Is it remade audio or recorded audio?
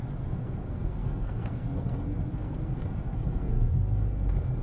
remade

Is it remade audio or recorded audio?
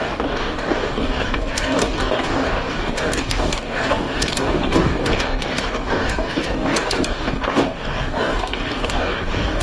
remade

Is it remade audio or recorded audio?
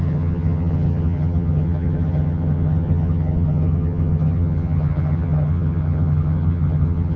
remade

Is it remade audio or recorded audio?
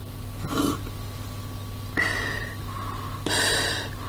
recorded